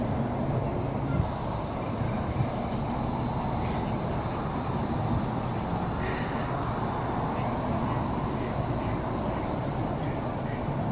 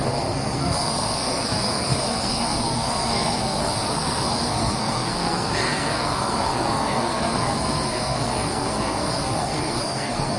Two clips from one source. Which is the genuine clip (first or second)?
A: first